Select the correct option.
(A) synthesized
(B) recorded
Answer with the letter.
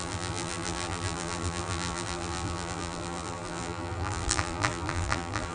A